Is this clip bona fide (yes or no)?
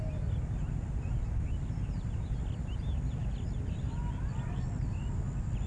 yes